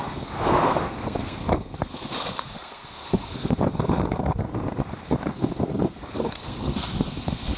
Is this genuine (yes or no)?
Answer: no